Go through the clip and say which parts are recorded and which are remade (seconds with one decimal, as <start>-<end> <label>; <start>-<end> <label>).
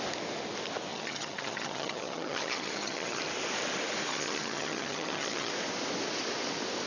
0.0-0.9 recorded; 0.9-3.2 remade; 3.2-4.1 recorded; 4.1-5.5 remade; 5.5-6.9 recorded